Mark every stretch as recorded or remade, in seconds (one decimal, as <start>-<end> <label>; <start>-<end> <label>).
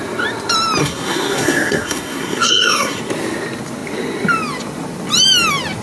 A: 0.0-0.8 recorded; 0.8-3.0 remade; 3.0-5.8 recorded